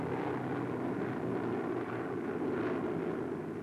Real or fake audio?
real